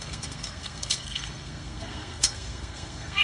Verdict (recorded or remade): remade